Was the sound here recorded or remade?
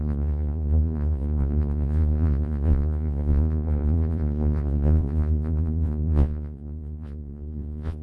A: remade